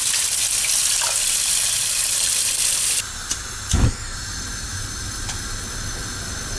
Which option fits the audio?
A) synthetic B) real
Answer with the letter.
B